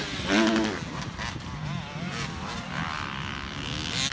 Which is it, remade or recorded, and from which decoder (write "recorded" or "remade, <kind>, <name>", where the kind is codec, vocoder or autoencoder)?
recorded